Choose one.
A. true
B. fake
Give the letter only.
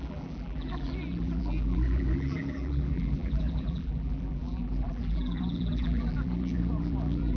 B